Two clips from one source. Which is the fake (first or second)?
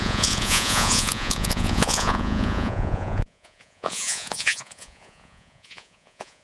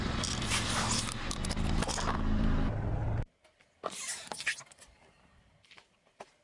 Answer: first